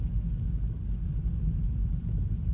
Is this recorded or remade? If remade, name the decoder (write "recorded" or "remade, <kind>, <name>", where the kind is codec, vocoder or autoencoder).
recorded